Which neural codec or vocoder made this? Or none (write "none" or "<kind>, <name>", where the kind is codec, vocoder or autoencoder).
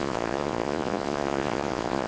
vocoder, Vocos